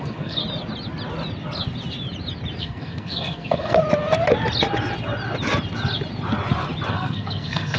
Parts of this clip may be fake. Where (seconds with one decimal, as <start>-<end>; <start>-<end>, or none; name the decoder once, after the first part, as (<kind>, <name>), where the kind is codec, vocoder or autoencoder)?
0.0-0.4 (codec, SNAC); 2.6-3.8; 6.9-7.8